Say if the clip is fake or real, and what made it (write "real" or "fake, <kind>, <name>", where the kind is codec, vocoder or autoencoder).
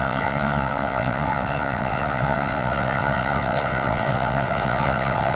fake, vocoder, WaveNeXt